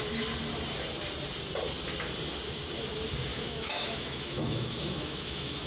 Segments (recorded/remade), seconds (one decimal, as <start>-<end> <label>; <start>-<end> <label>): 0.0-3.3 recorded; 3.3-5.7 remade